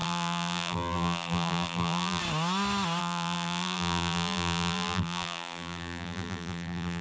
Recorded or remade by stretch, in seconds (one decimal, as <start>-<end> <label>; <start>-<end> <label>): 0.0-2.2 remade; 2.2-3.0 recorded; 3.0-7.0 remade